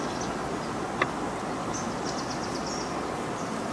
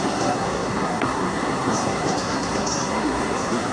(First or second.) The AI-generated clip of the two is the second